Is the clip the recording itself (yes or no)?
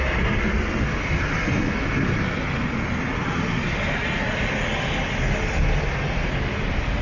yes